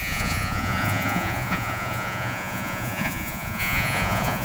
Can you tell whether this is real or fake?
fake